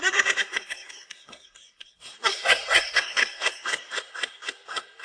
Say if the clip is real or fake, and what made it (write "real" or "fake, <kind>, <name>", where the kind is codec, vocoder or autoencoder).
fake, codec, SNAC